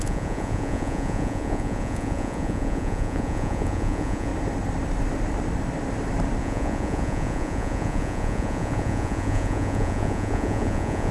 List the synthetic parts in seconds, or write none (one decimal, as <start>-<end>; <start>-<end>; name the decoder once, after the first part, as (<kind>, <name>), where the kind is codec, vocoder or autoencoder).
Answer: 0.0-4.3 (vocoder, Vocos); 6.4-11.1